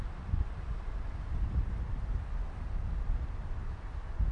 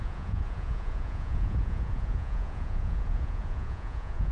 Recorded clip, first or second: first